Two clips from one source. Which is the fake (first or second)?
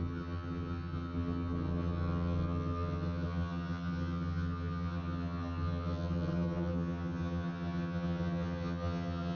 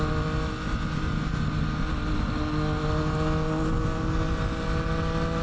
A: first